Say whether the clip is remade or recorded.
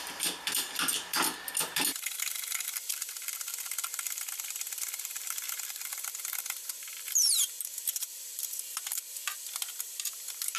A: remade